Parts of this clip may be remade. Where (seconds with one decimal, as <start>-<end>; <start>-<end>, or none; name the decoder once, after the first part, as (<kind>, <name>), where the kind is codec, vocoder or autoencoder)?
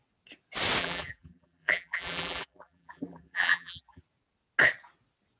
0.8-4.0 (vocoder, BigVGAN v2)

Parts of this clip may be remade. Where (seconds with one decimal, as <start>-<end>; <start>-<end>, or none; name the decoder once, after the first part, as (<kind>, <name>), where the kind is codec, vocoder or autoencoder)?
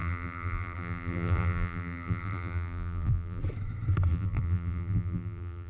0.0-3.4 (vocoder, BigVGAN v2); 4.1-5.7